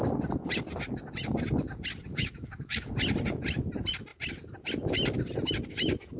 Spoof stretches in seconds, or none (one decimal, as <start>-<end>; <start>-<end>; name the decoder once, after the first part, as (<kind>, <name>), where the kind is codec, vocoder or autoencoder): 2.1-2.9 (autoencoder, DAC-VAE)